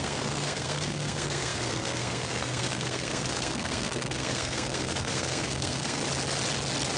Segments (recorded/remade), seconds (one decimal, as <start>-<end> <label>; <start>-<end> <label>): 0.0-6.0 remade; 6.0-7.0 recorded